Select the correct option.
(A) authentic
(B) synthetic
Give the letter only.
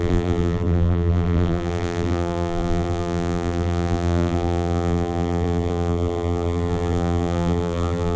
B